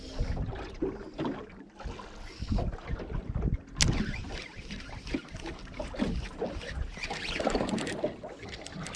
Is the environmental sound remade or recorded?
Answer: recorded